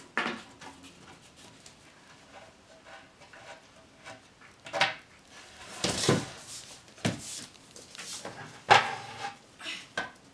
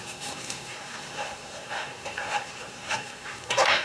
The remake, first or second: second